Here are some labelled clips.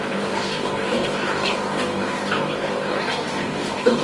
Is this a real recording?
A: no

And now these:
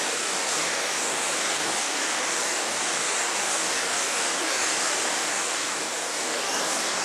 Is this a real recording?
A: no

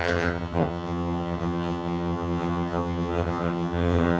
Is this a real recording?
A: no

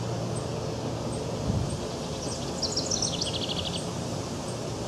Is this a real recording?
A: yes